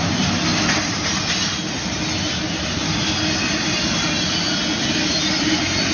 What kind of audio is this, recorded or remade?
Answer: recorded